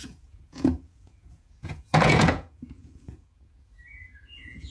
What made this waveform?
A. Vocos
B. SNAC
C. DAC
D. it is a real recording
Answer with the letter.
A